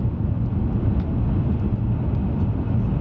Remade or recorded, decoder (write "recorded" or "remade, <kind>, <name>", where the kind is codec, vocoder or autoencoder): recorded